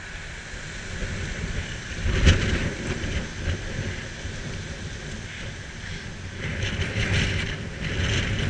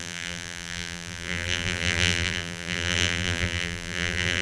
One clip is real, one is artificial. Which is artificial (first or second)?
second